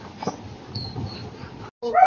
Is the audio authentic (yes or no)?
yes